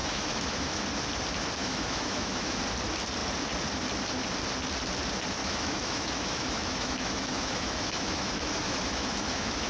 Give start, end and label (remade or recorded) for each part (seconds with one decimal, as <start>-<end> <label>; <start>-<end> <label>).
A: 0.0-0.7 remade; 0.7-1.6 recorded; 1.6-2.6 remade; 2.6-5.4 recorded; 5.4-9.7 remade